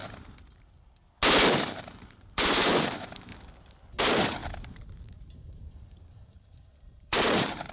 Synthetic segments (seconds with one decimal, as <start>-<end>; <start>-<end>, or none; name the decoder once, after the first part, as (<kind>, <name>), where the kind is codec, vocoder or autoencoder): 1.5-3.3 (vocoder, BigVGAN v2); 4.0-4.4; 4.9-7.7